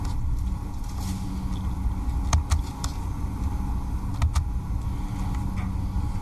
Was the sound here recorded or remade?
recorded